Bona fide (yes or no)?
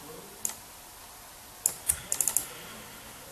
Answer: yes